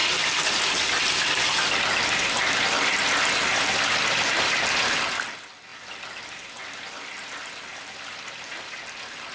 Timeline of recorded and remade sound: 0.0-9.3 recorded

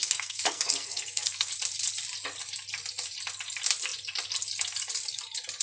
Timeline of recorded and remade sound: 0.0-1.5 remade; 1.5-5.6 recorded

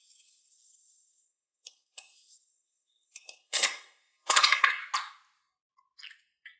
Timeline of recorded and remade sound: 0.0-4.8 remade; 4.8-6.6 recorded

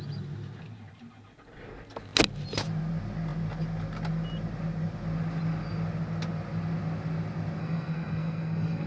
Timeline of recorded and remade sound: 0.0-7.6 recorded; 7.6-8.9 remade

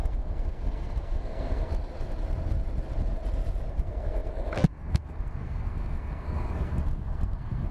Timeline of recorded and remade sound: 0.0-1.7 remade; 1.7-3.7 recorded; 3.7-7.7 remade